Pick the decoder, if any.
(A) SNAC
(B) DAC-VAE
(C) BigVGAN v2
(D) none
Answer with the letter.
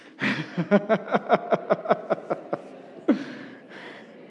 D